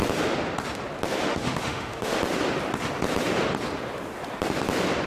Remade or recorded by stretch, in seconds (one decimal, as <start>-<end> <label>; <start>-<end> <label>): 0.0-1.3 recorded; 1.3-2.2 remade; 2.2-5.1 recorded